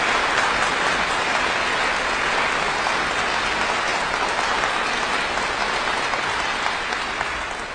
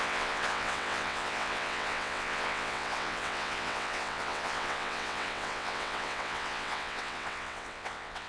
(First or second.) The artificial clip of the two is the second